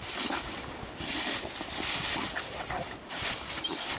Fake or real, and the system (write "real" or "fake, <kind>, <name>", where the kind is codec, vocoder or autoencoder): real